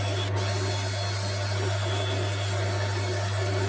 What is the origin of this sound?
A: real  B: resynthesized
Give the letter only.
A